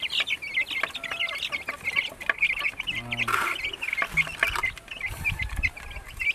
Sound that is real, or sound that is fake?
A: real